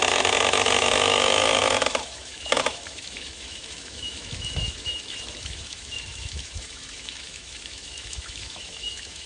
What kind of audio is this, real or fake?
fake